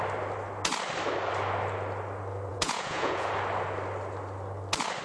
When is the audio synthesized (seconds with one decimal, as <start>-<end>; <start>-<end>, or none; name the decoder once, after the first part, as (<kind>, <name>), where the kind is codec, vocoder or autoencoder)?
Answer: 2.5-3.3 (vocoder, Vocos)